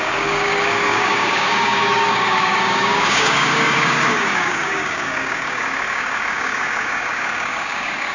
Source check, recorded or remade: remade